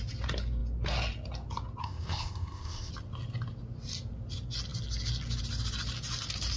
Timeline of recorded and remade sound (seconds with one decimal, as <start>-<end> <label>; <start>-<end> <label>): 0.0-1.8 recorded; 1.8-2.9 remade; 2.9-6.6 recorded